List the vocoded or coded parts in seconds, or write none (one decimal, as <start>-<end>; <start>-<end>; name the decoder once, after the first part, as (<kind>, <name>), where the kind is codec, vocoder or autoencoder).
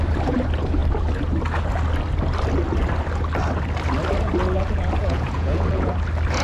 5.0-5.9 (vocoder, Vocos)